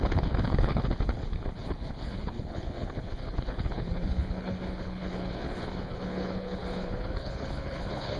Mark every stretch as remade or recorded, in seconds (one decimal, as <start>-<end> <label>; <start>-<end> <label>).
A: 0.0-8.2 remade